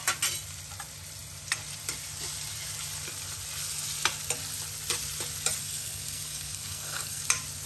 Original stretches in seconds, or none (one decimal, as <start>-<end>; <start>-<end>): 0.0-5.6; 7.2-7.7